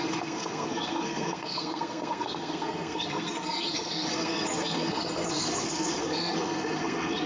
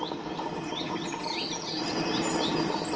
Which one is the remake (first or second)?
first